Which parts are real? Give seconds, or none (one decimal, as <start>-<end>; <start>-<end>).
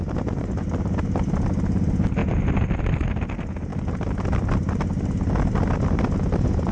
0.0-6.7